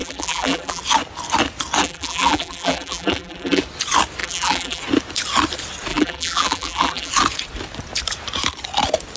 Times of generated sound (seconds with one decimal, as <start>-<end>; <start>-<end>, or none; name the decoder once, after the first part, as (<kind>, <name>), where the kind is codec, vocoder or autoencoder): 0.0-0.8 (vocoder, BigVGAN v2); 1.8-3.6; 4.2-4.8; 5.9-7.1